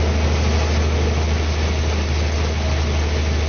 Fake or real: real